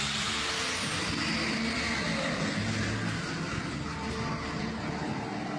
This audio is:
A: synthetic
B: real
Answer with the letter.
B